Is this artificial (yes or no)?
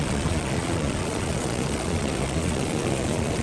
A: yes